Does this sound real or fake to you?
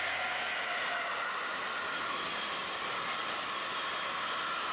real